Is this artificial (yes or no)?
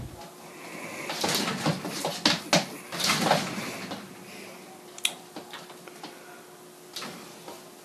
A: no